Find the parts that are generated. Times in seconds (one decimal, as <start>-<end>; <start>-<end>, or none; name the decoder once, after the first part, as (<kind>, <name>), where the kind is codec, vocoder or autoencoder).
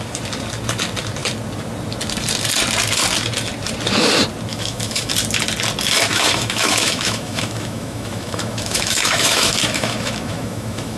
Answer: 4.5-5.1 (autoencoder, DAC-VAE); 6.1-11.0